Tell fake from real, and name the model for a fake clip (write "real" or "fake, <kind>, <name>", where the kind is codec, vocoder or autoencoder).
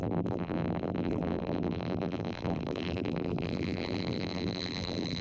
fake, vocoder, BigVGAN v2